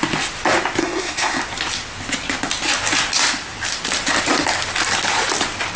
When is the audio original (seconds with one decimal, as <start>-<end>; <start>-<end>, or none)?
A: 0.0-0.8; 1.4-5.8